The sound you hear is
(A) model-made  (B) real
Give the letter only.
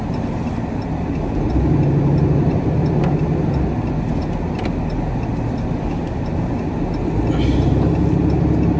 B